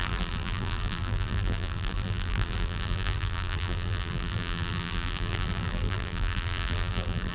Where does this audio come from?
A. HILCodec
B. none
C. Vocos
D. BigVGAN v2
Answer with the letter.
D